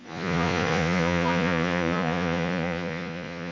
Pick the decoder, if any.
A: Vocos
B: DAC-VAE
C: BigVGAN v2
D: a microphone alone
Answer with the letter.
A